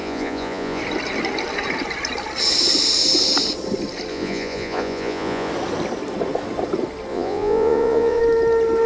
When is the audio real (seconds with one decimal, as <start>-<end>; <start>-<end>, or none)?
0.8-4.1; 5.5-7.1; 8.2-8.9